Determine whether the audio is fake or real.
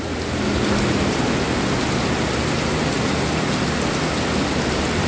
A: real